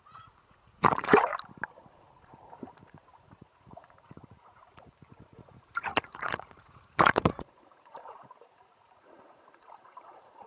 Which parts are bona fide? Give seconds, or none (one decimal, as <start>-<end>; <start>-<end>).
1.3-1.9